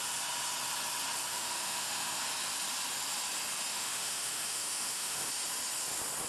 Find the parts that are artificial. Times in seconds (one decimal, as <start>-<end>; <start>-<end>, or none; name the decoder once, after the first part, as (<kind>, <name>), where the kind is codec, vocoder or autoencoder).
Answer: 1.3-2.2 (autoencoder, DAC-VAE); 3.7-5.3